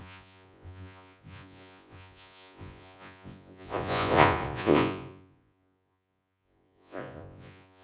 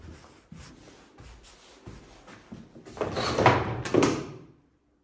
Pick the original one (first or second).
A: second